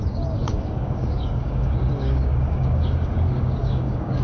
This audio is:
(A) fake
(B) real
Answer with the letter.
A